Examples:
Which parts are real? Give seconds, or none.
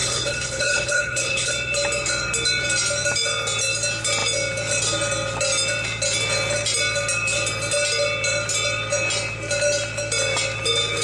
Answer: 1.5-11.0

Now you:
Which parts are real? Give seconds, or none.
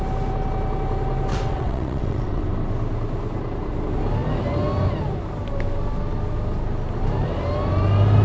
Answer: 0.0-1.3; 2.4-8.2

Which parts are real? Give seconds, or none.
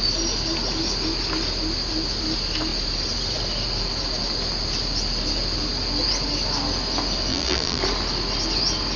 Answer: 0.0-7.3; 7.8-9.0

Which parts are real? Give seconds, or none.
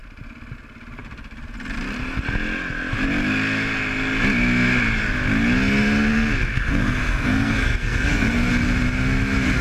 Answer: 0.0-6.5; 8.5-9.6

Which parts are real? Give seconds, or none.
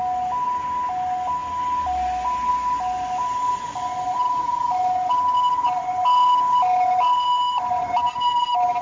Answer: 0.0-8.8